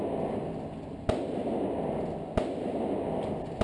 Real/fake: real